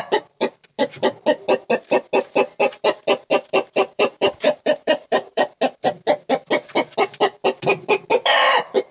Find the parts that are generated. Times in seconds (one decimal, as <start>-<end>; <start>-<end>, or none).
3.3-5.5